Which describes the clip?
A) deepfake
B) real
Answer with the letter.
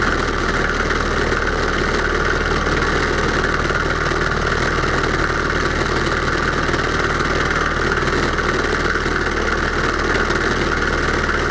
B